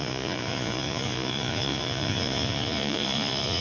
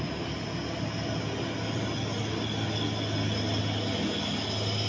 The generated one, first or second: first